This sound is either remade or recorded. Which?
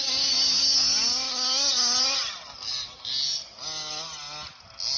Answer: recorded